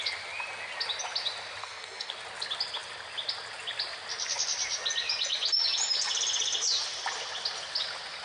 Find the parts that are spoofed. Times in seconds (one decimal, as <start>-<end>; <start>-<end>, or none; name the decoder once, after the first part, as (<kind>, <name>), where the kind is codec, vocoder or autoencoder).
1.6-2.1 (codec, SNAC)